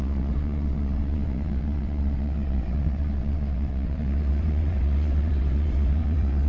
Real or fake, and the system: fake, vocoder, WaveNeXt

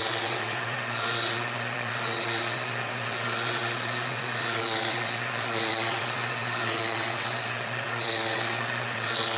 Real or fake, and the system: fake, vocoder, WaveNeXt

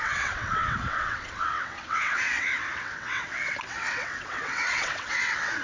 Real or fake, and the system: fake, vocoder, WaveNeXt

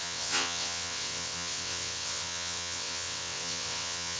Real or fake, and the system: fake, vocoder, WaveNeXt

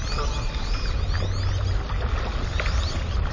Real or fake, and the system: real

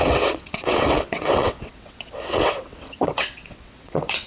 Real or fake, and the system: fake, vocoder, WaveNeXt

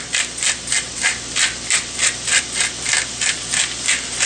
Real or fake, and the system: real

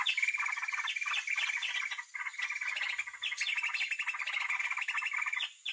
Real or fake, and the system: real